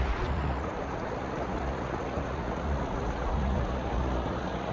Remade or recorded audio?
remade